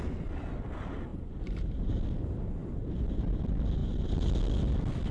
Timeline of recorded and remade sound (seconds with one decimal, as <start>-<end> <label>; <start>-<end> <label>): 0.0-1.1 recorded; 1.1-1.9 remade; 1.9-2.6 recorded; 2.6-3.3 remade; 3.3-3.8 recorded; 3.8-4.3 remade; 4.3-5.1 recorded